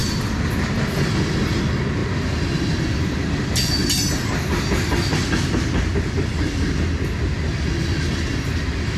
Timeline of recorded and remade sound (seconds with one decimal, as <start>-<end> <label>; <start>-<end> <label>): 0.0-9.0 recorded